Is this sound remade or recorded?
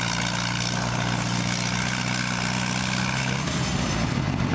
recorded